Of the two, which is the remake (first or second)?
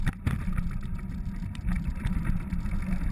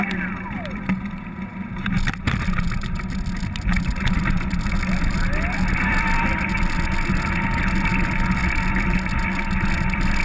first